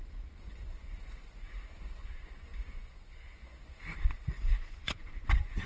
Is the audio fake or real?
fake